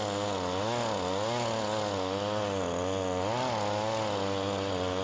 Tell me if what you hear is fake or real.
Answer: real